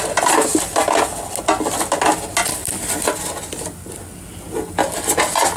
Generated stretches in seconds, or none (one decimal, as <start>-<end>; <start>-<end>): none